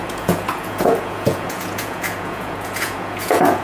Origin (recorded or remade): remade